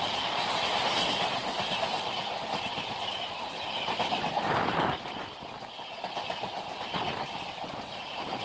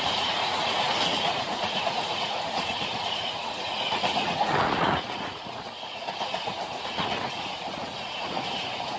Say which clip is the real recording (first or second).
first